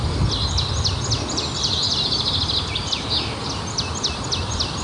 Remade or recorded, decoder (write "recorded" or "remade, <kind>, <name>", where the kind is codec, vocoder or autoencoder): recorded